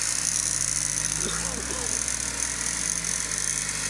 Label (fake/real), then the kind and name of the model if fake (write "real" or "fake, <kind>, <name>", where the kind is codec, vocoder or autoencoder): real